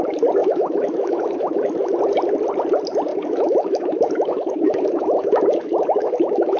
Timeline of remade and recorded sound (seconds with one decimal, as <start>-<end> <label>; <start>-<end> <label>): 0.0-0.4 recorded; 0.4-2.0 remade; 2.0-3.1 recorded; 3.1-6.6 remade